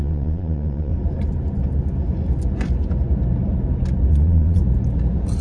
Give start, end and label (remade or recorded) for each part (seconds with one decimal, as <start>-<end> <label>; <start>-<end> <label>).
0.0-0.9 remade; 0.9-4.1 recorded; 4.1-4.6 remade; 4.6-5.4 recorded